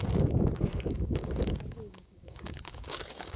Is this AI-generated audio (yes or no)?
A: yes